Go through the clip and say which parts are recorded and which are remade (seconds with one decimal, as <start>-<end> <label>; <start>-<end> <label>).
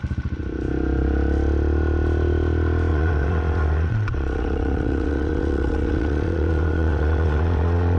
0.0-2.9 recorded; 2.9-8.0 remade